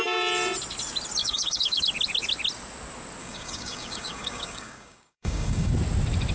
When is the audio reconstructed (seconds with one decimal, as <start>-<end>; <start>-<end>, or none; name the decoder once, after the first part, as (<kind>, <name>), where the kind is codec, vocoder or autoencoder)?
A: 1.2-1.8 (codec, DAC); 3.2-5.7

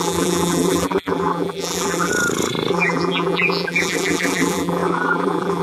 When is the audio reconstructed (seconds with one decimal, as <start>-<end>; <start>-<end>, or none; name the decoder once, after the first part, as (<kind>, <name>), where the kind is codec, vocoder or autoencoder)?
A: 0.0-2.1 (vocoder, BigVGAN v2); 2.7-5.6

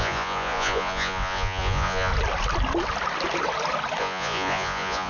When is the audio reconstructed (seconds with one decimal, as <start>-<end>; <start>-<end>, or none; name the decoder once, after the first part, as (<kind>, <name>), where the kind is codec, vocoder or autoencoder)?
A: 0.0-2.1 (vocoder, Vocos); 4.0-5.1